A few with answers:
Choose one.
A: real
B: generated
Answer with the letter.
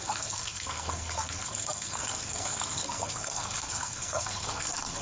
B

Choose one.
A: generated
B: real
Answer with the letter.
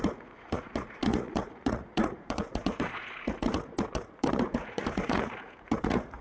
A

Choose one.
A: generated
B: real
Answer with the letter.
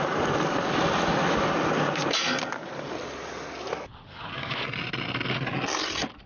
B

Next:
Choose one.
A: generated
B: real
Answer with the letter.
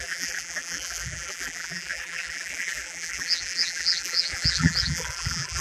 A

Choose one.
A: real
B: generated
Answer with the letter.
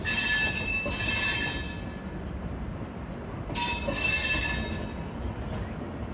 A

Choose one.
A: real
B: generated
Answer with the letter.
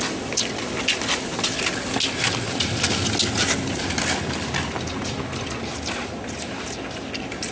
A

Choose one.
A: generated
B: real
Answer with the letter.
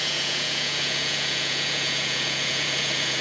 A